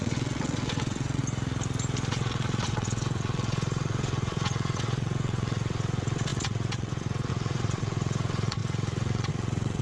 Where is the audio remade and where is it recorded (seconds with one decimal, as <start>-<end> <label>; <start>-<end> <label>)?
0.0-1.2 remade; 1.2-2.1 recorded; 2.1-9.8 remade